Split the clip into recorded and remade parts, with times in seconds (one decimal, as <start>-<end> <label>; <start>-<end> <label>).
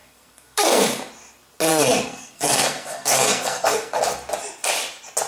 0.0-1.1 remade; 1.1-1.7 recorded; 1.7-4.0 remade; 4.0-5.3 recorded